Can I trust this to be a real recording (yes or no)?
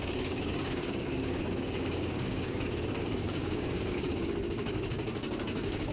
no